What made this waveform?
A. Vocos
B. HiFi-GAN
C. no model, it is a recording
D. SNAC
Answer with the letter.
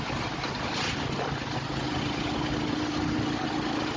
C